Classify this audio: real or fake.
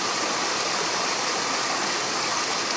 real